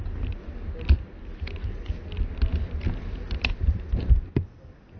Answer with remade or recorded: recorded